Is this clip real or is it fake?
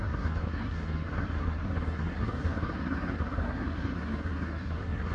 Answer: fake